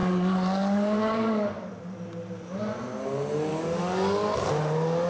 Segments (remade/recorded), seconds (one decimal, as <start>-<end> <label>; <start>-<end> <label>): 0.0-1.7 remade; 1.7-3.5 recorded; 3.5-4.5 remade; 4.5-5.1 recorded

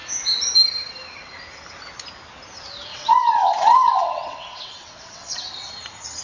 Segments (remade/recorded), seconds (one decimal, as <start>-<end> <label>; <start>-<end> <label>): 0.0-2.9 recorded; 2.9-5.7 remade; 5.7-6.2 recorded